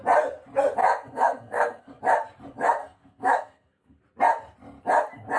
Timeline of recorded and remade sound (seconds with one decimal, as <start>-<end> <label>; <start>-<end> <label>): 0.0-0.8 recorded; 0.8-2.0 remade; 2.0-2.8 recorded; 2.8-4.0 remade; 4.0-5.4 recorded